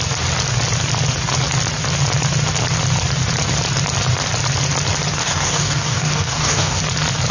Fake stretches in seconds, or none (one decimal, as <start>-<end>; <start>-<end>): 5.2-6.8